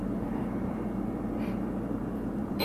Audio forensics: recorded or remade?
remade